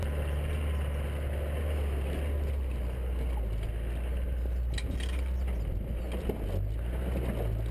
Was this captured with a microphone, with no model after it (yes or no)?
yes